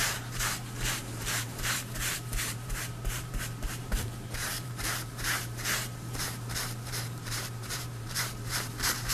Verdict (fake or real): fake